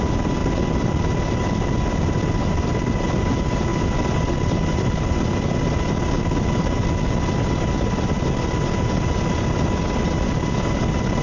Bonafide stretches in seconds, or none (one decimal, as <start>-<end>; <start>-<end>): 0.0-11.2